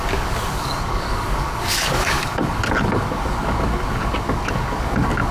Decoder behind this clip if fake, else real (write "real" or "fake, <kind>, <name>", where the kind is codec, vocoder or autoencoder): fake, codec, DAC